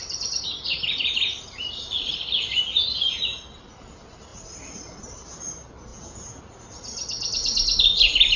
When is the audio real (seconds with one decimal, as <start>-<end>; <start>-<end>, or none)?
0.0-5.9; 6.4-8.4